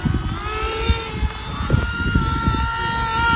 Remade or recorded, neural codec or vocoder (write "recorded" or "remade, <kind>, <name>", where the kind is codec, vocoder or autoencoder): recorded